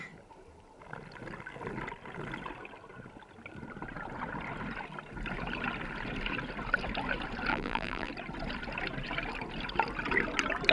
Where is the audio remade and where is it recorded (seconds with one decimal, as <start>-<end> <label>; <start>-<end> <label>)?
0.0-7.5 recorded; 7.5-8.1 remade; 8.1-10.7 recorded